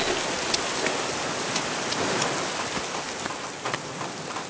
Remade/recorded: recorded